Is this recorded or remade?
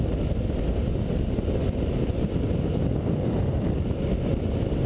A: recorded